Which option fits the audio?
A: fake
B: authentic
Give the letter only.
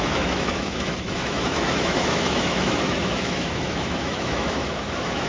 A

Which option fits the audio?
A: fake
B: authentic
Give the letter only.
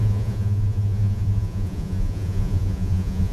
A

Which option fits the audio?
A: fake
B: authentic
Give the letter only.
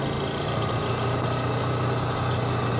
B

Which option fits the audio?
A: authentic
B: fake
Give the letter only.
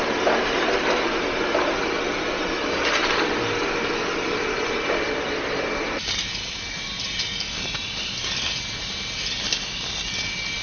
A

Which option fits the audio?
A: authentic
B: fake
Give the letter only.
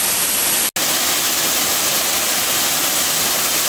A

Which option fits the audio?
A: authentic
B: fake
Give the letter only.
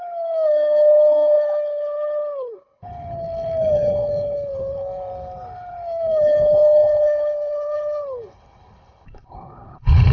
B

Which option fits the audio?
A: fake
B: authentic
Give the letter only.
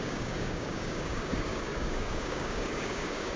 A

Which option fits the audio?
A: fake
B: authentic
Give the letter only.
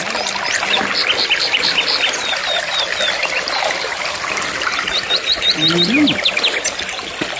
A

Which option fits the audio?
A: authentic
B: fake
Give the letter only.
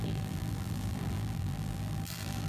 B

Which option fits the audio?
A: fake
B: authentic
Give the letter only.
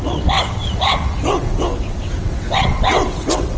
A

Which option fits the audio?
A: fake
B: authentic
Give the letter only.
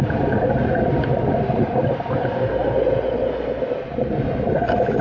B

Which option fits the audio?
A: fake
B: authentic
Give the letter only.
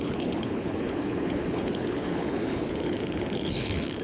A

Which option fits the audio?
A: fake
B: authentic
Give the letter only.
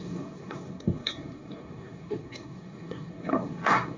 A